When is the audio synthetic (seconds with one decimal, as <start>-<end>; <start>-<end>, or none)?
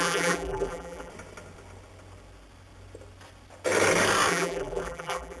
0.0-1.1; 4.3-5.4